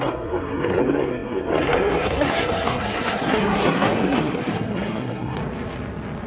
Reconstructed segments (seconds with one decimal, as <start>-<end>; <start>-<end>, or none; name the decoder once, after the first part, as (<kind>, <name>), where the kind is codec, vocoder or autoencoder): 0.0-5.4 (codec, SNAC)